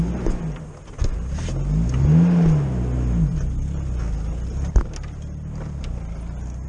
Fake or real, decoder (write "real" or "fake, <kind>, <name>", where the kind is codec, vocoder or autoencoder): real